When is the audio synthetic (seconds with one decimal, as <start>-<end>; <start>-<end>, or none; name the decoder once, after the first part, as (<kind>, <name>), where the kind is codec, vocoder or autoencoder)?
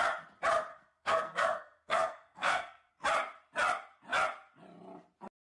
0.7-2.9 (codec, SNAC)